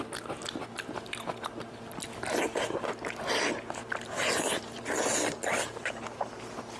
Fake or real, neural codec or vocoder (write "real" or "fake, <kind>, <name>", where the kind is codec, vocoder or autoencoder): real